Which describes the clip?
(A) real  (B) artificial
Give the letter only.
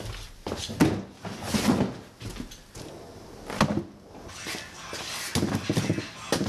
A